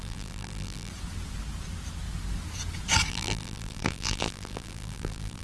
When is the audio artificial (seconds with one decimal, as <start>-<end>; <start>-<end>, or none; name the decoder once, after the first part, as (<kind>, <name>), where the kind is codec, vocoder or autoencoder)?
0.0-0.9 (vocoder, BigVGAN v2); 3.1-5.4